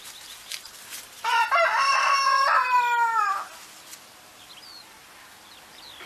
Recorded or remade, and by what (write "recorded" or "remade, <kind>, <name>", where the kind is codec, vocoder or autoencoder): recorded